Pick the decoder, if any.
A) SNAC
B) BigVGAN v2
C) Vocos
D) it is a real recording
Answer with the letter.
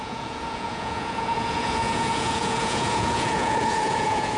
C